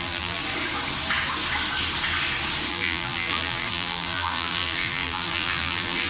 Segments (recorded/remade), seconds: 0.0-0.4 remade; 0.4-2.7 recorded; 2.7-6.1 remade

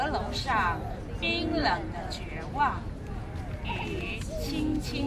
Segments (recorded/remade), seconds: 0.0-1.6 recorded; 1.6-2.6 remade; 2.6-5.1 recorded

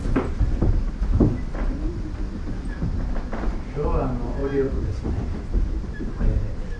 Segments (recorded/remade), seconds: 0.0-0.7 remade; 0.7-4.4 recorded; 4.4-5.8 remade; 5.8-6.8 recorded

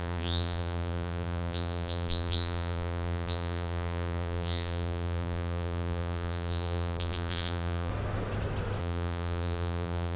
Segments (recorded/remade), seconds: 0.0-7.9 remade; 7.9-8.8 recorded; 8.8-10.2 remade

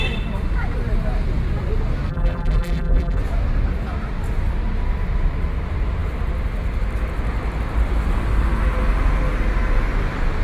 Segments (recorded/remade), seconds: 0.0-2.1 recorded; 2.1-3.2 remade; 3.2-10.4 recorded

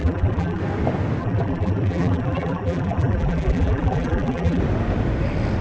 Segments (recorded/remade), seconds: 0.0-0.6 remade; 0.6-1.2 recorded; 1.2-4.6 remade; 4.6-5.6 recorded